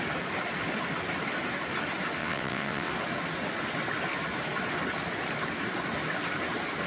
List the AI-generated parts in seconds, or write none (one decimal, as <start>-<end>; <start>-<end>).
2.2-2.9